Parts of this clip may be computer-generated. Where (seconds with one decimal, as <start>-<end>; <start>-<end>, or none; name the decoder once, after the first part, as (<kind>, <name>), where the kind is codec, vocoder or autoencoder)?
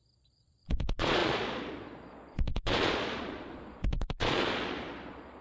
0.0-5.4 (vocoder, Vocos)